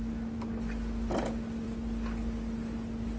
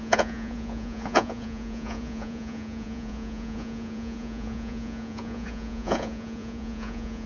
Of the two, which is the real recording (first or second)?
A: first